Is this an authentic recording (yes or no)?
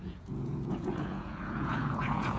no